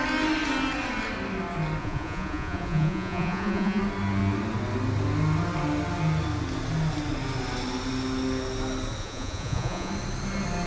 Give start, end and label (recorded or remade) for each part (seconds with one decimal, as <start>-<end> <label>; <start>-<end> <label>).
0.0-1.8 recorded; 1.8-3.8 remade; 3.8-9.0 recorded; 9.0-9.9 remade; 9.9-10.7 recorded